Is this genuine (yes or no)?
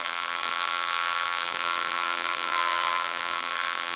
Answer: no